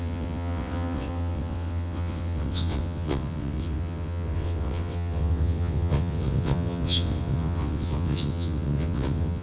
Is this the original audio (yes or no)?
no